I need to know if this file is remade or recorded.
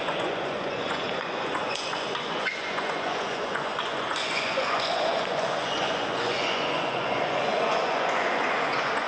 remade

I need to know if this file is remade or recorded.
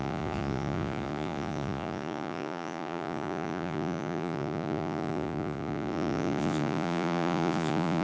remade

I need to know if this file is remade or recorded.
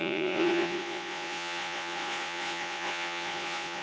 remade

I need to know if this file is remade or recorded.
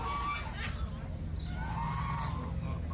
recorded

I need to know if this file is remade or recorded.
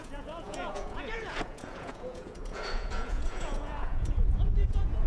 remade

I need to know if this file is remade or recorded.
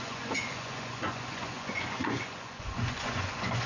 remade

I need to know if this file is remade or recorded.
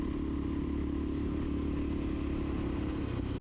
recorded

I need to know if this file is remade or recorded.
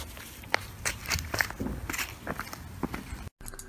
recorded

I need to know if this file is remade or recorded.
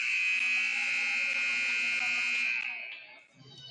recorded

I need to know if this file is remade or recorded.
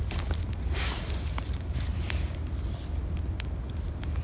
recorded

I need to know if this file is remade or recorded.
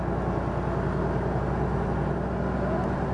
recorded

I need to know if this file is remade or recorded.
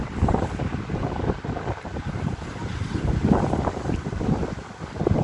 recorded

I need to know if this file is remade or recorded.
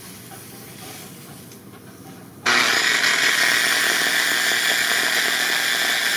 recorded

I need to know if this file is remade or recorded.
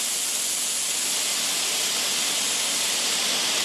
recorded